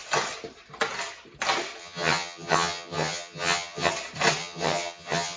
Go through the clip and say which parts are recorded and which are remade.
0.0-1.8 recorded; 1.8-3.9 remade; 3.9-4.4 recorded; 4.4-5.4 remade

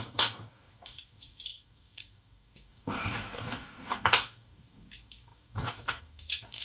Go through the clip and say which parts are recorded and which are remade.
0.0-6.6 remade

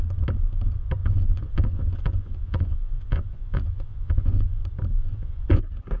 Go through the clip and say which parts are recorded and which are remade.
0.0-1.0 recorded; 1.0-4.6 remade; 4.6-5.0 recorded; 5.0-5.6 remade; 5.6-6.0 recorded